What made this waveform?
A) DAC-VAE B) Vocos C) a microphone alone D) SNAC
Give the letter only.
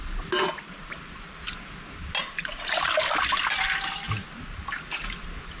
C